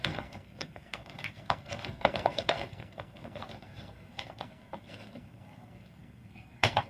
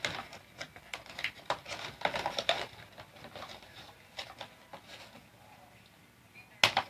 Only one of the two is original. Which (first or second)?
second